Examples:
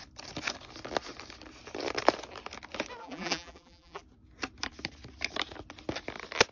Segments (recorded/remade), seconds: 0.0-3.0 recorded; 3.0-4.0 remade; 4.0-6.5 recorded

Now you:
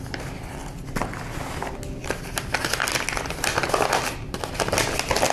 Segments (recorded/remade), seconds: 0.0-0.6 recorded; 0.6-1.4 remade; 1.4-2.0 recorded; 2.0-4.0 remade; 4.0-5.3 recorded

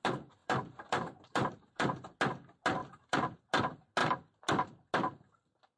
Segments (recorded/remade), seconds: 0.0-0.4 recorded; 0.4-2.1 remade; 2.1-2.8 recorded; 2.8-3.4 remade; 3.4-5.8 recorded

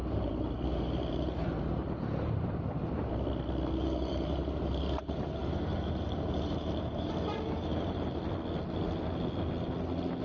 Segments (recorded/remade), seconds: 0.0-2.4 remade; 2.4-3.8 recorded; 3.8-8.2 remade; 8.2-10.2 recorded

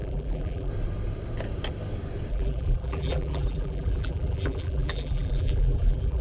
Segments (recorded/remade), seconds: 0.0-0.7 remade; 0.7-2.3 recorded; 2.3-6.2 remade

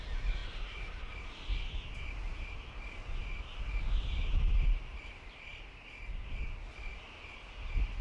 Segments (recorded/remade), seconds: 0.0-0.4 recorded; 0.4-0.9 remade; 0.9-8.0 recorded